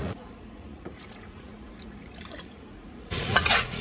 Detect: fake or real fake